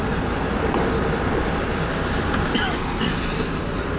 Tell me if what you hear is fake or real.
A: real